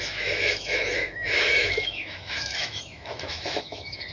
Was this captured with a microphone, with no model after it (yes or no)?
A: no